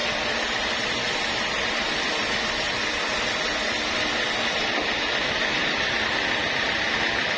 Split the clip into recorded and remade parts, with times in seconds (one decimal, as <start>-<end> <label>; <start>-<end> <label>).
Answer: 0.0-7.4 recorded

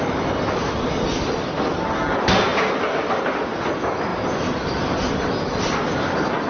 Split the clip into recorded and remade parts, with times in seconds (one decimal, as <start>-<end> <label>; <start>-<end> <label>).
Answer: 0.0-6.5 recorded

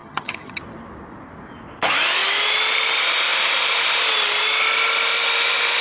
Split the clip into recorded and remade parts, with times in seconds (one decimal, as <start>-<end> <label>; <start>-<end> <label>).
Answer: 0.0-0.6 remade; 0.6-5.8 recorded